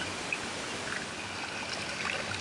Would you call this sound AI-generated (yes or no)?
no